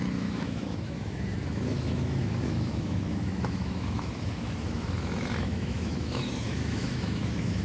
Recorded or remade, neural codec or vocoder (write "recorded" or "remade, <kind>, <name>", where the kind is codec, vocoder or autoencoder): remade, autoencoder, DAC-VAE